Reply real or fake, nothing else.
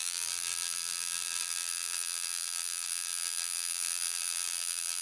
fake